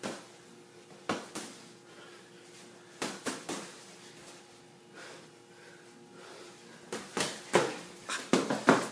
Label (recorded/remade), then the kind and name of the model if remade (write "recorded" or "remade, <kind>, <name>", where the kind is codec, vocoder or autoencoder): recorded